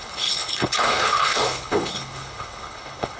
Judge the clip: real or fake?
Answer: fake